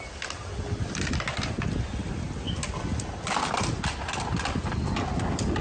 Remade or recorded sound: recorded